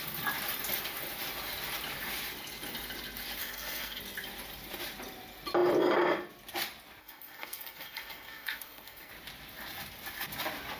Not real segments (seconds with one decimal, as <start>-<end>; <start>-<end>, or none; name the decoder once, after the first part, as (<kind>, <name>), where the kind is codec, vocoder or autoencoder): 3.4-4.0 (codec, SNAC); 7.0-9.1